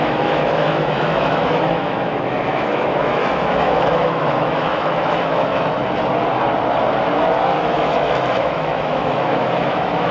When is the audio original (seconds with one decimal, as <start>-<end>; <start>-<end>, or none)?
5.8-7.6

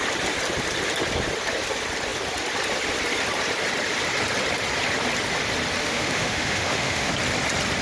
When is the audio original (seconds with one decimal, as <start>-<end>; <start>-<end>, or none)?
0.0-5.8; 7.1-7.8

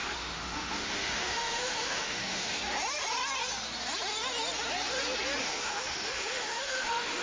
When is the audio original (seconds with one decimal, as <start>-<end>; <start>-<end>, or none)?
2.6-5.4

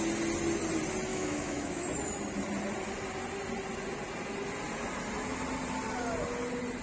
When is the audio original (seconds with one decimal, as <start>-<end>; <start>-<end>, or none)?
0.0-1.1; 1.8-6.8

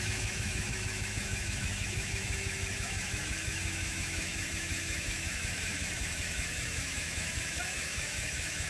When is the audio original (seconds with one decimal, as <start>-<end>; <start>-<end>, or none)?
none

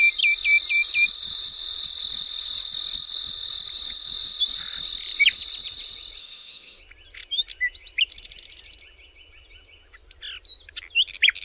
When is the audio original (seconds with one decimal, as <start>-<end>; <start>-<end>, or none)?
0.0-6.2; 6.8-11.4

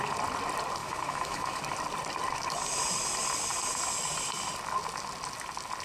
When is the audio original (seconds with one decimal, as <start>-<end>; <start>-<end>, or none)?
0.0-0.8; 1.6-5.8